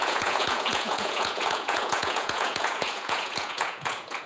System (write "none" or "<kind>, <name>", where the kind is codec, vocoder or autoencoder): vocoder, Vocos